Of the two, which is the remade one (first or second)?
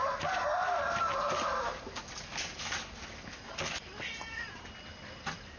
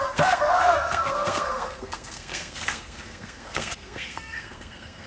second